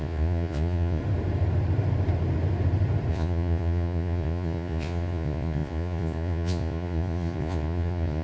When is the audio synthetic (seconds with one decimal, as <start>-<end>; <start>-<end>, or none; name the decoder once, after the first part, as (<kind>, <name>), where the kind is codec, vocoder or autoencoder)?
0.0-1.0 (vocoder, Vocos); 3.1-8.2